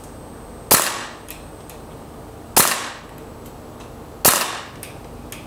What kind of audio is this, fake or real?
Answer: real